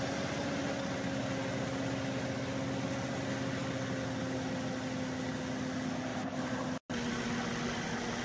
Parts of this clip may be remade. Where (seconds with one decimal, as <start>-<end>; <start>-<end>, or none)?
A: 6.1-6.7